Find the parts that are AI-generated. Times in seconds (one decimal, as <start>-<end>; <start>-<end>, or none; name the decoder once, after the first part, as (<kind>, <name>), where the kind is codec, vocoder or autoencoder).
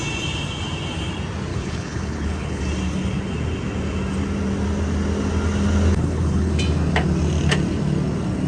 1.5-2.6 (codec, HILCodec); 5.9-6.5